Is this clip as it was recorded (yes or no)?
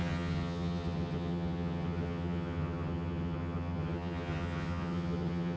no